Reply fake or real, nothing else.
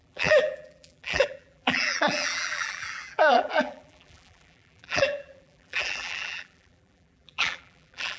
fake